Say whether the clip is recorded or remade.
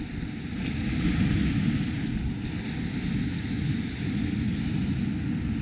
recorded